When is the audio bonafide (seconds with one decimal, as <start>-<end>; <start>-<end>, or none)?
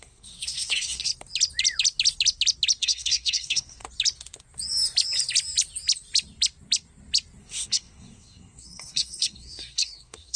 1.1-2.8; 3.8-7.4